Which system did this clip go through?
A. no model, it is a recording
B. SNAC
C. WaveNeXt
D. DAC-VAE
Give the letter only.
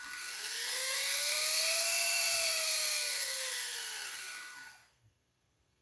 B